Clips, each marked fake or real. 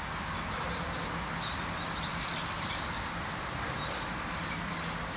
real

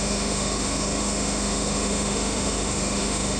fake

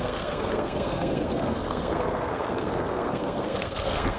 fake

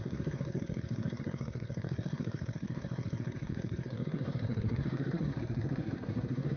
fake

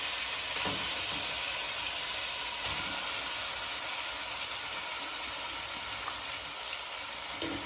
real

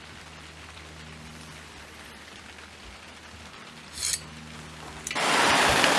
fake